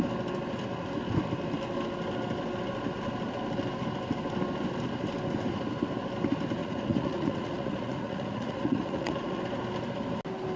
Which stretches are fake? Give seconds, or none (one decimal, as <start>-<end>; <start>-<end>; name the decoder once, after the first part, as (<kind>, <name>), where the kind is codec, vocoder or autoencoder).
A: 6.6-9.4 (vocoder, Vocos)